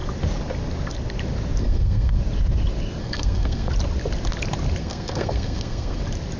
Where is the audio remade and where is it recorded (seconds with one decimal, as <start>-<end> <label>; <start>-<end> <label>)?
0.0-1.6 recorded; 1.6-2.2 remade; 2.2-3.0 recorded; 3.0-3.7 remade; 3.7-4.8 recorded; 4.8-6.0 remade; 6.0-6.4 recorded